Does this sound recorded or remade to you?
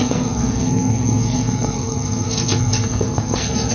remade